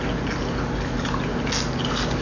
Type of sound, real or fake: real